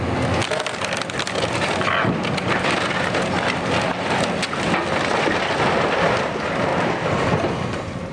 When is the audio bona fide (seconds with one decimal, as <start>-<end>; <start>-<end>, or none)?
0.0-8.1